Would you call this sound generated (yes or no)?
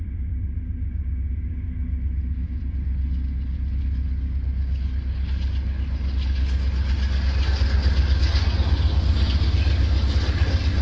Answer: no